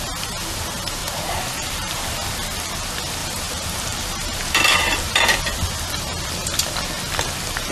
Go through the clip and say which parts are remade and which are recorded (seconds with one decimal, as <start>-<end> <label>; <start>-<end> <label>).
0.0-1.0 recorded; 1.0-2.1 remade; 2.1-3.2 recorded; 3.2-4.4 remade; 4.4-7.7 recorded